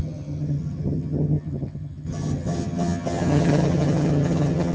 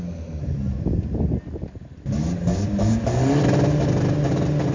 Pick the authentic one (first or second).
second